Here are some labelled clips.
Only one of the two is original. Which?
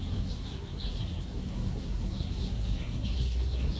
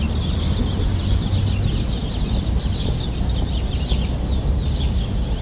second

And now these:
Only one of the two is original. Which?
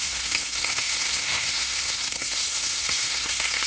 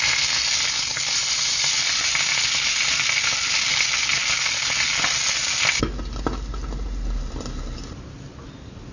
second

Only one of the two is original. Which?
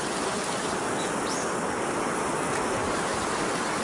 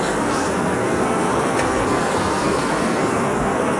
first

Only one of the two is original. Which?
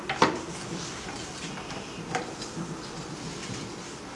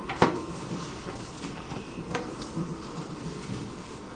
first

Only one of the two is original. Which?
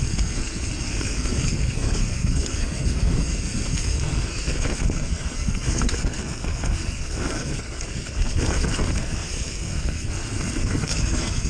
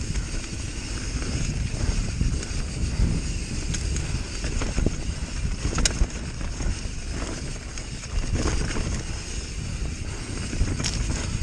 second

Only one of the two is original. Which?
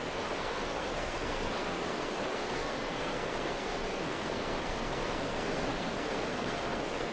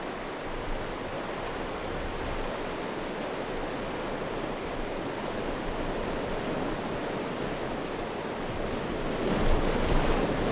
second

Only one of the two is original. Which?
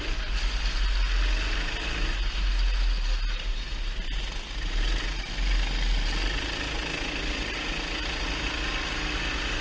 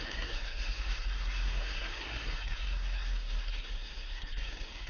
first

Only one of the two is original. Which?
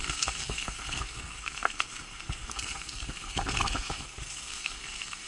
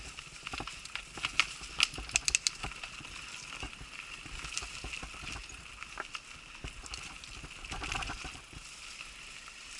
second